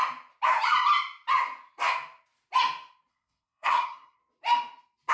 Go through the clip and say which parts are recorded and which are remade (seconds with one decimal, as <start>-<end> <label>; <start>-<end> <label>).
0.0-3.1 recorded; 3.1-4.2 remade; 4.2-5.1 recorded